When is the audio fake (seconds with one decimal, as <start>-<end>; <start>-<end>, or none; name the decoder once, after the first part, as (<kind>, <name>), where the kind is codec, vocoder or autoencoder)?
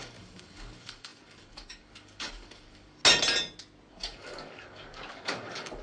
0.0-3.0 (codec, DAC); 3.9-5.8